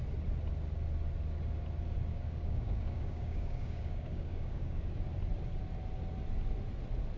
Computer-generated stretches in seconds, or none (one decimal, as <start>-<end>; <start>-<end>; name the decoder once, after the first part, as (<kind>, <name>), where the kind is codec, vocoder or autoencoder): 2.1-4.9 (codec, DAC)